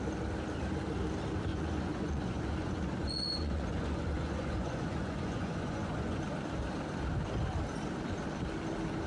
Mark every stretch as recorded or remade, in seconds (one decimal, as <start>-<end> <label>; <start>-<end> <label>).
0.0-1.5 recorded; 1.5-6.2 remade; 6.2-9.1 recorded